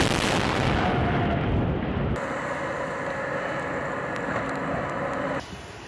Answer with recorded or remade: recorded